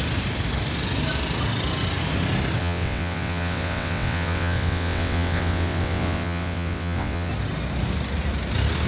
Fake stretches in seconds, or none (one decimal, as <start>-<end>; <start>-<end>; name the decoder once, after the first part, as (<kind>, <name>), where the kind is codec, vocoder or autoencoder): 2.6-7.3 (vocoder, WaveNeXt)